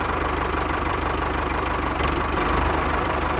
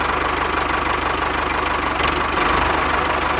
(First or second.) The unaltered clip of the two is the second